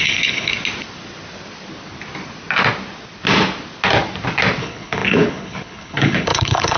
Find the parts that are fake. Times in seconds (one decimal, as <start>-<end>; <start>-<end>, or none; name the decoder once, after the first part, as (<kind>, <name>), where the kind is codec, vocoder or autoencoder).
0.0-0.5 (codec, HILCodec); 4.6-6.8